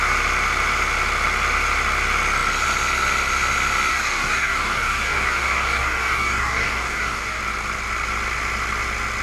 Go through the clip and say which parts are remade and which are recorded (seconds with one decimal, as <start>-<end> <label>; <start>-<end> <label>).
0.0-3.9 recorded; 3.9-7.4 remade; 7.4-9.2 recorded